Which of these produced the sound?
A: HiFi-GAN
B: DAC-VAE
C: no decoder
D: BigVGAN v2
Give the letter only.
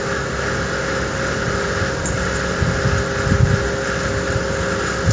C